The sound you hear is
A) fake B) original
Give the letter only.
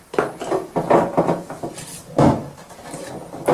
B